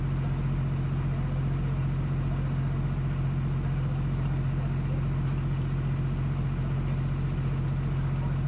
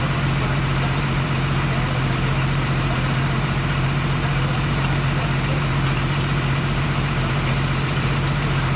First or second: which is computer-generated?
second